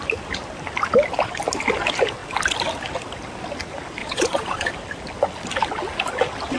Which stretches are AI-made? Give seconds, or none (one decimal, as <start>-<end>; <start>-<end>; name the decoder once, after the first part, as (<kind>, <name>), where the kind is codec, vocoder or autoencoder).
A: 4.0-4.7 (vocoder, Vocos)